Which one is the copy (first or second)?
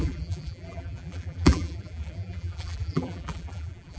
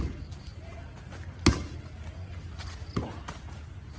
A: first